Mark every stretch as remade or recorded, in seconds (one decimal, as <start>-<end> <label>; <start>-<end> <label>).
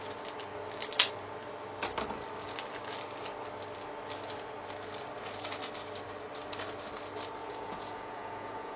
0.0-7.4 recorded; 7.4-8.8 remade